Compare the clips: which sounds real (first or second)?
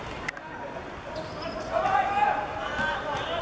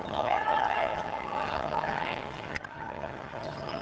first